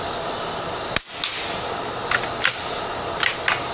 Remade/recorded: recorded